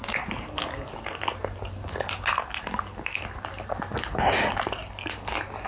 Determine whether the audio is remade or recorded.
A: recorded